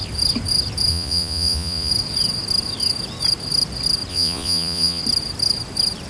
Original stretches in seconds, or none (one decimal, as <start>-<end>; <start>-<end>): 0.0-0.9; 1.9-4.1; 5.0-6.1